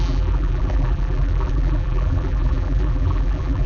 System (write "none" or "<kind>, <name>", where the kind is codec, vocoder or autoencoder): vocoder, BigVGAN v2